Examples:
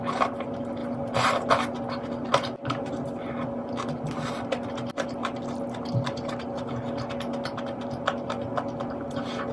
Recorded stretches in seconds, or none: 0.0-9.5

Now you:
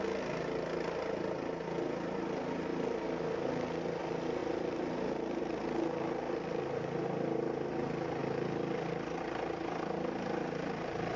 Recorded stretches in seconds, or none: 0.0-11.2

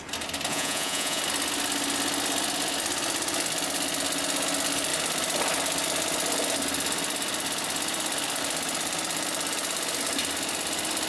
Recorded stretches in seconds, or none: 0.0-0.5; 1.2-11.1

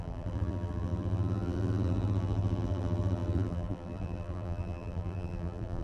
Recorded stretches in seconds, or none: none

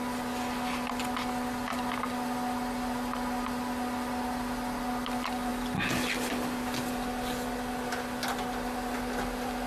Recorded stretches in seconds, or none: 0.0-9.7